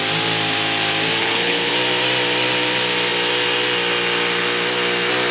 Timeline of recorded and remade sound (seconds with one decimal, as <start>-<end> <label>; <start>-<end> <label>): 0.0-1.2 recorded; 1.2-1.7 remade; 1.7-5.3 recorded